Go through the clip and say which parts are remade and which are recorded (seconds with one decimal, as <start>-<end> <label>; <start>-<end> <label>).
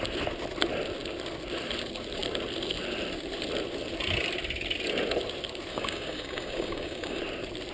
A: 0.0-5.7 recorded; 5.7-7.2 remade; 7.2-7.7 recorded